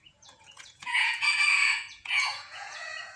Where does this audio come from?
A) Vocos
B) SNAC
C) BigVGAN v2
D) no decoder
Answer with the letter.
A